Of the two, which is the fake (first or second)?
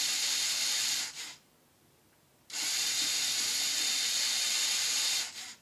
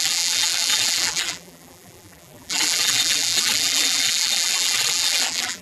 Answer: second